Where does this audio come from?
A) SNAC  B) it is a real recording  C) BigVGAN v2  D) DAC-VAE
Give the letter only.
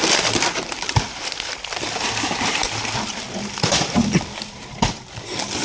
C